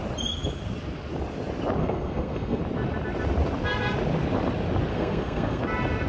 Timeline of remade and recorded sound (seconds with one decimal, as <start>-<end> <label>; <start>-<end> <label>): 0.0-1.8 recorded; 1.8-2.6 remade; 2.6-4.9 recorded; 4.9-5.6 remade; 5.6-6.1 recorded